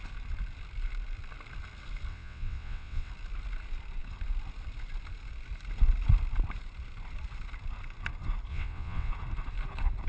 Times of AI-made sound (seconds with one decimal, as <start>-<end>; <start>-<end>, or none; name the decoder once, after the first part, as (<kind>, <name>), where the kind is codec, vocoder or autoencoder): 2.1-3.1 (vocoder, WaveNeXt); 8.5-9.1